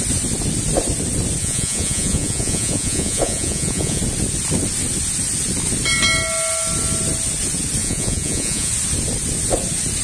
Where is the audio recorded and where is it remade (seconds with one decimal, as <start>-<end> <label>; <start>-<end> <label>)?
0.0-1.4 recorded; 1.4-4.0 remade; 4.0-7.8 recorded; 7.8-8.7 remade; 8.7-10.0 recorded